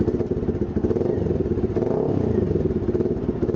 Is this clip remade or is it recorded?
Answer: recorded